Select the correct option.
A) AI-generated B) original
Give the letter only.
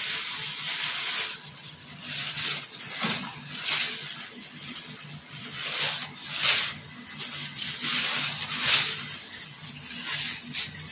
B